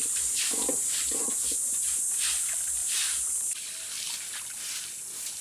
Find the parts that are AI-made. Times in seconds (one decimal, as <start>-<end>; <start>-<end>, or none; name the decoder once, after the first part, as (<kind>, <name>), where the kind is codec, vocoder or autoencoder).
0.0-1.9 (vocoder, BigVGAN v2); 2.8-4.4